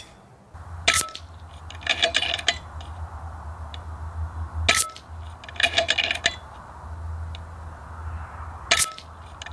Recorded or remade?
recorded